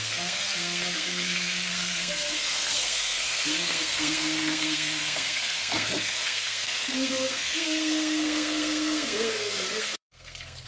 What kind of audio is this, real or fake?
fake